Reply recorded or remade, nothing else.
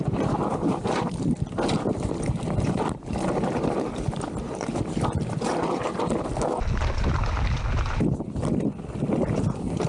recorded